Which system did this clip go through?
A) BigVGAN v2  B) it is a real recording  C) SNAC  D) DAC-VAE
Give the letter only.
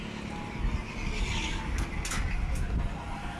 B